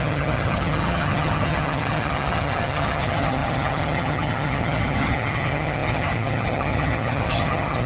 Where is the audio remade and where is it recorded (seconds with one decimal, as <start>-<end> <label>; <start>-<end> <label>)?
0.0-7.9 remade